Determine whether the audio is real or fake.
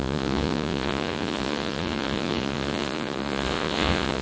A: fake